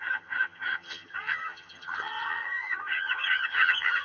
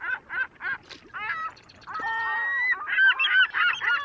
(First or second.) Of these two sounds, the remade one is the first